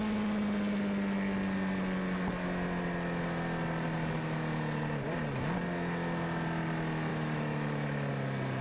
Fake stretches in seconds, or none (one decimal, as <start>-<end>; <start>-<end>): 7.1-8.1